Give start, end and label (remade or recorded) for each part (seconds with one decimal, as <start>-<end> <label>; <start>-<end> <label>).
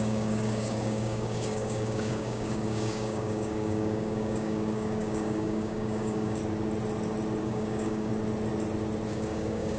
0.0-6.4 remade; 6.4-7.4 recorded; 7.4-8.1 remade; 8.1-9.1 recorded; 9.1-9.8 remade